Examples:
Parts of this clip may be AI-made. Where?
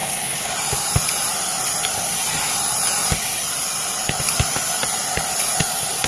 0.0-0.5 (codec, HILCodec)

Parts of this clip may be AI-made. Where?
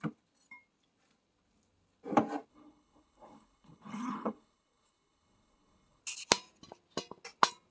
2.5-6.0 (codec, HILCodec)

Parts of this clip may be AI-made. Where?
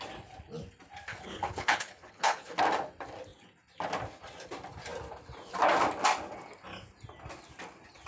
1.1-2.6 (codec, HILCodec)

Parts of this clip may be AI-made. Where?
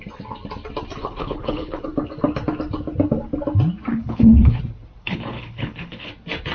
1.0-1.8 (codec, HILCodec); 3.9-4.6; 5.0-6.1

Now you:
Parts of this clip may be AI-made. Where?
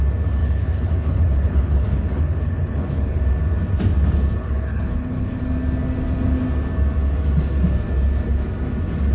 0.4-3.2 (codec, HILCodec); 4.4-5.4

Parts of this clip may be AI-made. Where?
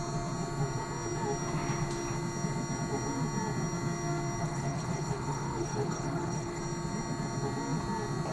4.4-6.6 (codec, HILCodec)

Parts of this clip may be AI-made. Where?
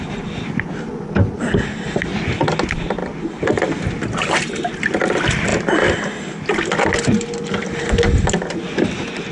none